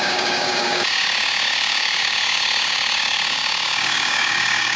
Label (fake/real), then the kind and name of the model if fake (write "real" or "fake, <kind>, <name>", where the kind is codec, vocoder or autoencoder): fake, codec, DAC